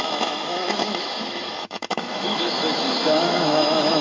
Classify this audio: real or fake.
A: fake